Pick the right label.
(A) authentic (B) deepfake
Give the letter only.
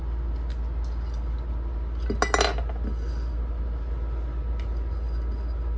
A